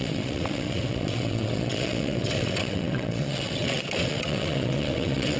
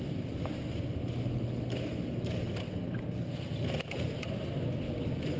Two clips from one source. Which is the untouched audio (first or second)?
second